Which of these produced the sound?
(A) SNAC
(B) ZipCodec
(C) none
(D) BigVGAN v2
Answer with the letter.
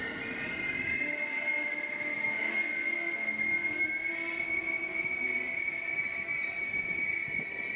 C